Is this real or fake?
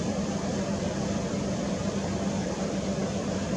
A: real